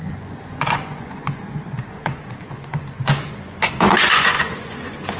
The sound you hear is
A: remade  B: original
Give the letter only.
A